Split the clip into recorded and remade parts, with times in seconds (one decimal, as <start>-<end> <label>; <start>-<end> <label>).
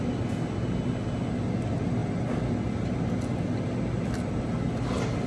0.0-5.3 recorded